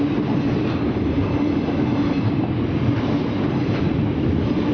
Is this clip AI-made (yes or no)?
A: no